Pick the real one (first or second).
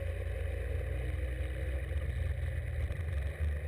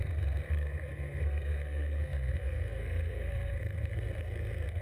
first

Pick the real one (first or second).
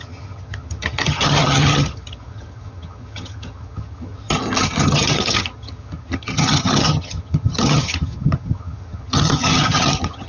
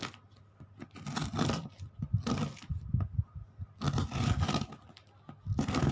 second